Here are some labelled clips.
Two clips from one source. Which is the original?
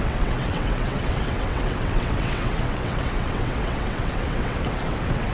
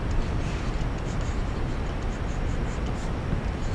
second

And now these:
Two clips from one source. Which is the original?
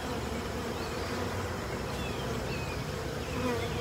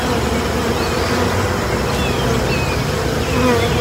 second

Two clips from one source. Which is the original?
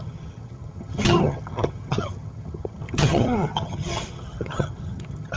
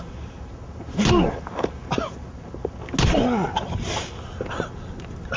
second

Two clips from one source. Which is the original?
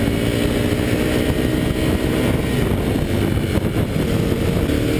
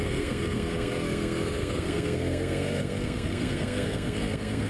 first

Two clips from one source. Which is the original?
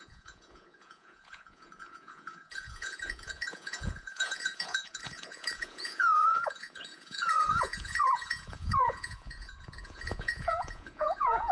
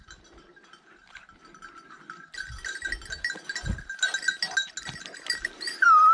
second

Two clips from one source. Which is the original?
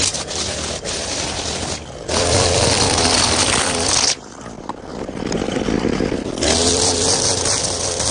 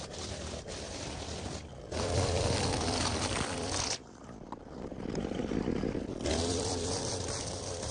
first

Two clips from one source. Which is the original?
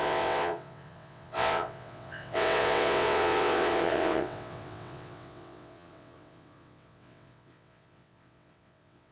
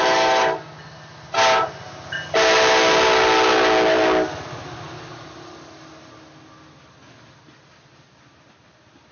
second